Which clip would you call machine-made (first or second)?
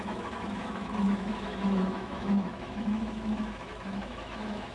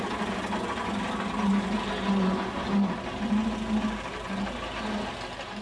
first